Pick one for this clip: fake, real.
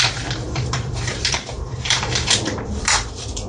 fake